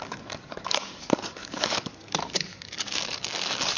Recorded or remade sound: remade